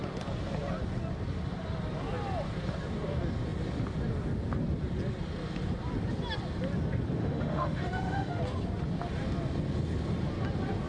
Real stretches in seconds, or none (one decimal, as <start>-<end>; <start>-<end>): 0.0-7.2; 8.4-10.9